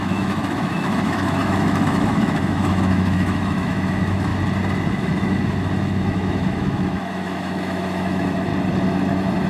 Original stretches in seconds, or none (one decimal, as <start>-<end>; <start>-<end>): 4.3-4.9; 8.5-9.5